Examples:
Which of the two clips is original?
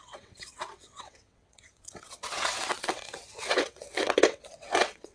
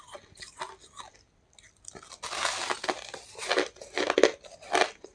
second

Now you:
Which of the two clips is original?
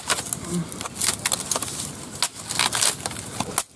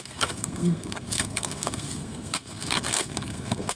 first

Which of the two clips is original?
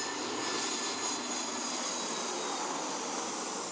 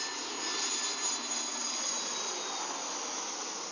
second